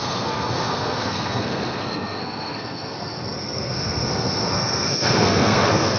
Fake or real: fake